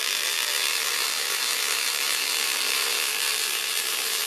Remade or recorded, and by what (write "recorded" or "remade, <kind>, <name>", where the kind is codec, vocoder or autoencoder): remade, vocoder, BigVGAN v2